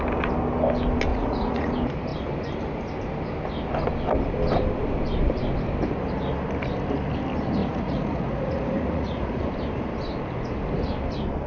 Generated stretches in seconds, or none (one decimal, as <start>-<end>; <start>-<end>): 1.1-1.7; 7.6-9.4